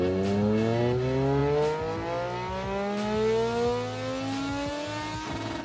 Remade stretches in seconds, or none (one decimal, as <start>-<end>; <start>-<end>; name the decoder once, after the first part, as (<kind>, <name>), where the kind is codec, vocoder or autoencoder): none